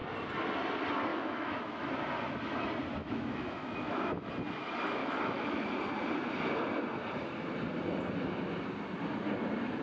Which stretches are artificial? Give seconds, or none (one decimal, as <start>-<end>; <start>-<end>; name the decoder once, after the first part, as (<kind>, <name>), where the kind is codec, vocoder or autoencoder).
1.1-1.9 (autoencoder, DAC-VAE); 3.0-4.3; 5.0-5.7